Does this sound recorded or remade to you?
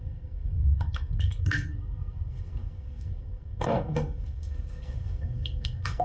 remade